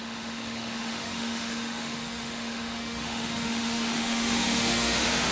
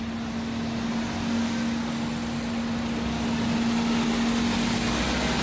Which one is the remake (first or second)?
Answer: first